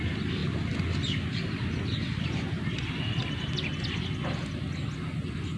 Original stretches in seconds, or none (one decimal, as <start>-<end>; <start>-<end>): 0.0-5.6